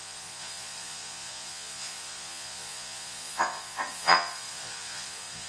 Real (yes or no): no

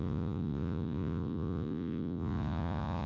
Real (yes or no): no